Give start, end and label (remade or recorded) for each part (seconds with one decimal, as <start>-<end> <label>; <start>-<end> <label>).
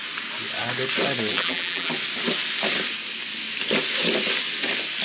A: 0.0-1.3 recorded; 1.3-1.9 remade; 1.9-5.0 recorded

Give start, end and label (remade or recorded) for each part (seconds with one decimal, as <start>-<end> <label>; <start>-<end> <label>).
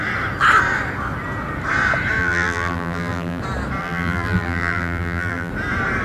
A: 0.0-2.2 recorded; 2.2-3.4 remade; 3.4-3.8 recorded; 3.8-5.5 remade; 5.5-6.0 recorded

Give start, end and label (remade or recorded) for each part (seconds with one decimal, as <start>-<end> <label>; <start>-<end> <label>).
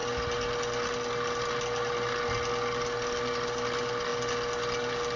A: 0.0-5.2 recorded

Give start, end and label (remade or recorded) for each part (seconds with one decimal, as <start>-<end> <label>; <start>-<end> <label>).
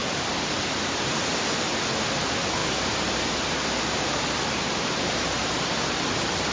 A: 0.0-1.3 remade; 1.3-2.6 recorded; 2.6-5.5 remade; 5.5-6.5 recorded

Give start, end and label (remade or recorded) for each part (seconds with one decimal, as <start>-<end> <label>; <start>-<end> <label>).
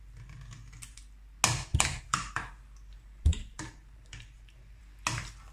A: 0.0-1.7 recorded; 1.7-2.5 remade; 2.5-3.3 recorded; 3.3-4.8 remade; 4.8-5.5 recorded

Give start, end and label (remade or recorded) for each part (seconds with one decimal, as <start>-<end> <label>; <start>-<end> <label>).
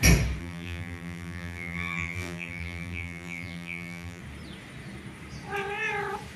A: 0.0-0.4 recorded; 0.4-4.2 remade; 4.2-6.4 recorded